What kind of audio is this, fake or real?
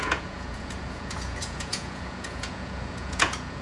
fake